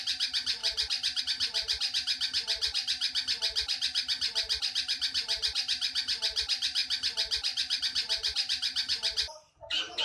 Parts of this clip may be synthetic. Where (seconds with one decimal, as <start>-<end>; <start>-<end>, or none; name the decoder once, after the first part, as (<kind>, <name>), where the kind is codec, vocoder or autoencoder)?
0.0-0.6 (vocoder, BigVGAN v2); 1.2-3.0; 4.9-6.8; 7.8-10.0